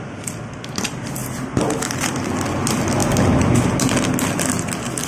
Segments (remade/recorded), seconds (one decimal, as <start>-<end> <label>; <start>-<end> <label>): 0.0-5.1 recorded